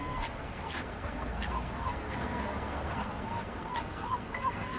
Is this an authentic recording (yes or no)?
no